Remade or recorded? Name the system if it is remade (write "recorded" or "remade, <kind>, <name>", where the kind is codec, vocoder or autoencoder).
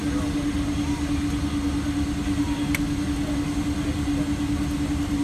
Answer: recorded